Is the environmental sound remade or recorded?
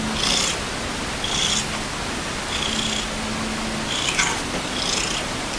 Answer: remade